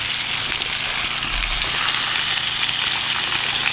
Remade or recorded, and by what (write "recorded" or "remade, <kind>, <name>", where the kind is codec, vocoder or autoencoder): recorded